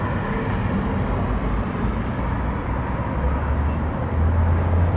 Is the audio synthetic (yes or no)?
no